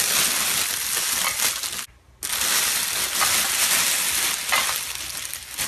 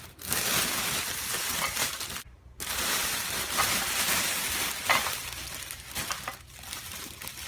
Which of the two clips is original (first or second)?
first